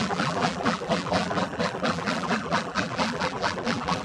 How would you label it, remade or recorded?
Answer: remade